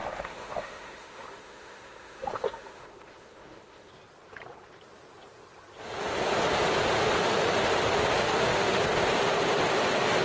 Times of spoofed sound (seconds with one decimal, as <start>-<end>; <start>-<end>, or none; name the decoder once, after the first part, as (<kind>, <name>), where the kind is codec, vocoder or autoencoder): 0.0-3.9 (autoencoder, DAC-VAE); 8.2-8.8